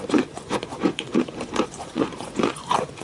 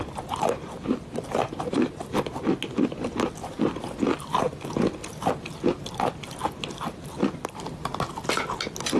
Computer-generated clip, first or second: first